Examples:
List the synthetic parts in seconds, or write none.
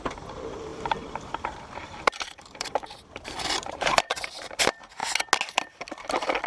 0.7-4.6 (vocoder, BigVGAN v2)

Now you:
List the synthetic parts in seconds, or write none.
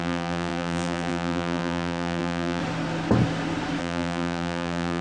0.0-2.6 (vocoder, BigVGAN v2); 3.8-5.0